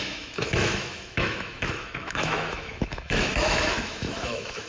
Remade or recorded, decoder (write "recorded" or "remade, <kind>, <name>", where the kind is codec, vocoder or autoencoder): remade, autoencoder, DAC-VAE